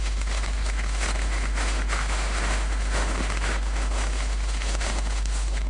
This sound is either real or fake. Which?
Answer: fake